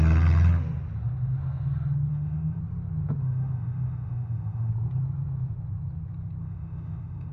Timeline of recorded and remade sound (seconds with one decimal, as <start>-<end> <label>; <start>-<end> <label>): 0.0-2.1 recorded; 2.1-2.6 remade; 2.6-3.2 recorded; 3.2-4.7 remade; 4.7-6.4 recorded; 6.4-7.3 remade

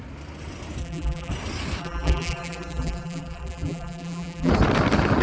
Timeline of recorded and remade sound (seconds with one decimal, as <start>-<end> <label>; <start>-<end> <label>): 0.0-0.8 recorded; 0.8-1.3 remade; 1.3-1.8 recorded; 1.8-4.5 remade; 4.5-5.2 recorded

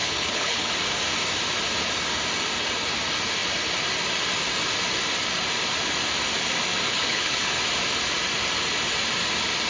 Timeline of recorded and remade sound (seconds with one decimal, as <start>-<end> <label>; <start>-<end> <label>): 0.0-0.7 remade; 0.7-6.9 recorded; 6.9-7.6 remade; 7.6-9.7 recorded

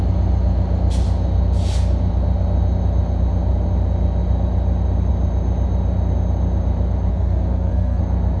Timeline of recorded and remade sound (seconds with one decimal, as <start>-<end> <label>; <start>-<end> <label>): 0.0-7.1 recorded; 7.1-8.0 remade; 8.0-8.4 recorded

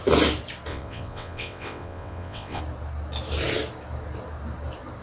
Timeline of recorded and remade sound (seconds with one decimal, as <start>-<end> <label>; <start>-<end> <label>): 0.0-0.7 recorded; 0.7-2.6 remade; 2.6-5.0 recorded